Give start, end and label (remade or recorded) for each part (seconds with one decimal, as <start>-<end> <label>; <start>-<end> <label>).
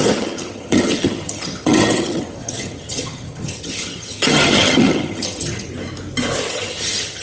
0.0-5.7 remade; 5.7-6.5 recorded; 6.5-7.2 remade